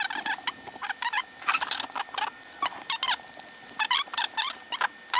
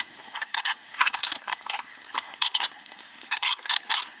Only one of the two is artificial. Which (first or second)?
second